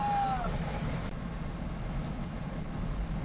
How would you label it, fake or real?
real